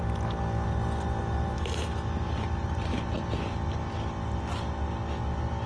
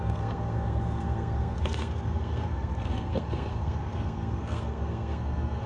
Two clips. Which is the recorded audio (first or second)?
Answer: first